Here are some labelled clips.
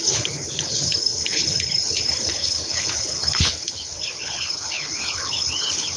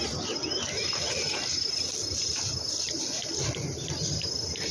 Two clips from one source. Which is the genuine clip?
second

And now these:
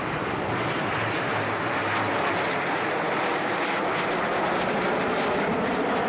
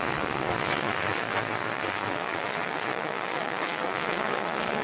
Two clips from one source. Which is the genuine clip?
first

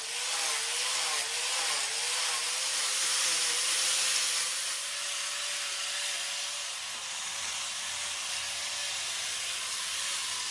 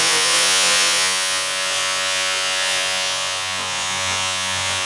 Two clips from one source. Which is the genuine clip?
first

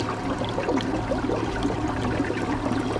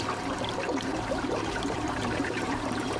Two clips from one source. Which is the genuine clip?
first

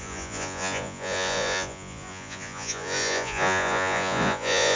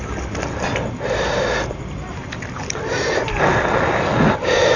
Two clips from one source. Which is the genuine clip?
second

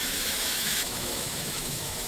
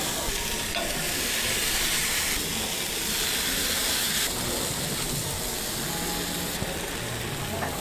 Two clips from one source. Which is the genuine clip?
second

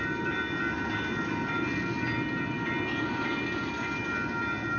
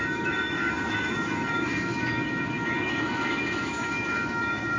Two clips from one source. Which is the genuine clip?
first